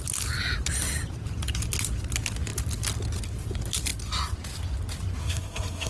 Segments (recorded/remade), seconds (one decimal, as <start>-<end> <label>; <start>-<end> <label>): 0.0-5.2 recorded; 5.2-5.9 remade